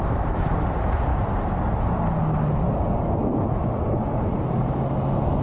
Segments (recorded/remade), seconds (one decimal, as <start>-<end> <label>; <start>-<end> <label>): 0.0-5.4 recorded